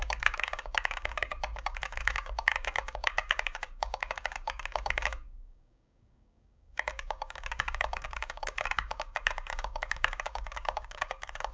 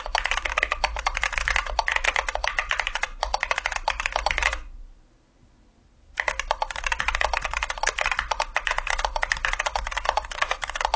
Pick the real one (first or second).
second